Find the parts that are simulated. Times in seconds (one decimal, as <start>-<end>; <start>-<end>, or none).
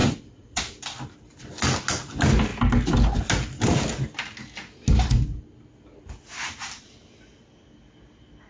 0.0-0.6